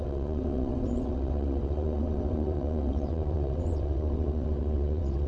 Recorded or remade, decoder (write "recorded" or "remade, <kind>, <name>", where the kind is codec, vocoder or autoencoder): remade, vocoder, WaveNeXt